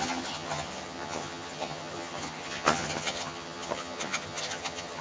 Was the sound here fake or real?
fake